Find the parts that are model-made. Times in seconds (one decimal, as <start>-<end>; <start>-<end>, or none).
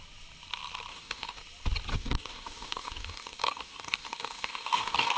0.9-1.4; 1.9-5.2